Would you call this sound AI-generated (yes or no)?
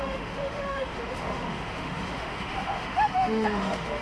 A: yes